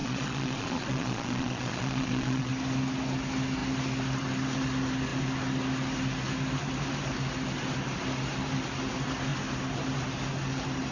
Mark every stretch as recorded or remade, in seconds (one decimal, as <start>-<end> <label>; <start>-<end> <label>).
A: 0.0-2.5 remade; 2.5-10.9 recorded